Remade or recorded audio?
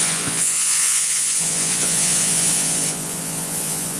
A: remade